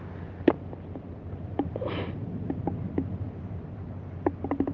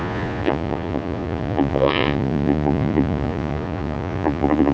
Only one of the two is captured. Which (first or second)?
first